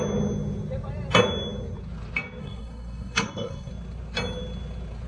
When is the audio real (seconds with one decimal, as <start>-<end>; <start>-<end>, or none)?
0.0-2.4; 3.7-5.1